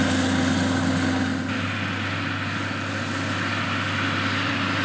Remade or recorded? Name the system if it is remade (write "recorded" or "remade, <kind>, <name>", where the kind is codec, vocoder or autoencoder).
recorded